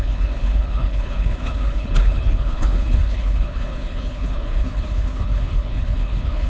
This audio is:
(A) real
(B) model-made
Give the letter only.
B